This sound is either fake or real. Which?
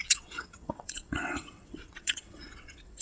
fake